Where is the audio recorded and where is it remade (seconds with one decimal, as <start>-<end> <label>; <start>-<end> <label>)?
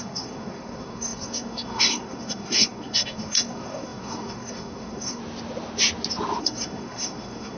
0.0-5.2 remade; 5.2-6.4 recorded; 6.4-7.6 remade